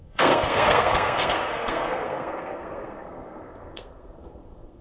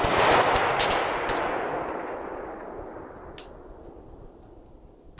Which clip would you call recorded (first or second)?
second